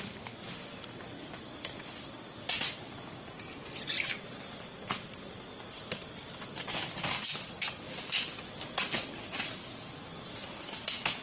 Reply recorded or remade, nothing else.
recorded